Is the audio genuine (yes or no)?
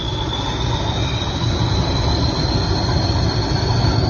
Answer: yes